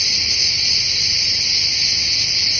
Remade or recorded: remade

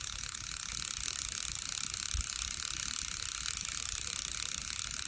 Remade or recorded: recorded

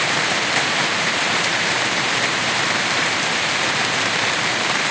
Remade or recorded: remade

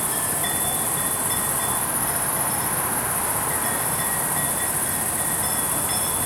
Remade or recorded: remade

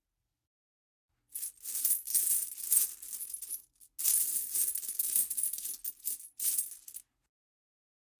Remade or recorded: recorded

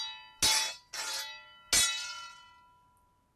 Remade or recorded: recorded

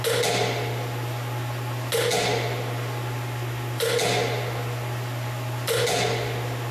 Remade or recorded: recorded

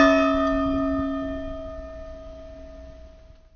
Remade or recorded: recorded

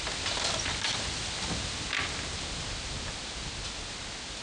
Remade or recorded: recorded